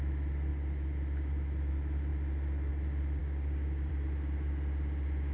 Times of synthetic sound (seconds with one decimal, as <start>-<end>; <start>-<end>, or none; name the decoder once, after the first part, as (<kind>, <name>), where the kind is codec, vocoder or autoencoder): 3.2-3.9 (codec, DAC)